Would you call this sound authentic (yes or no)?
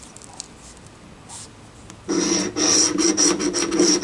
yes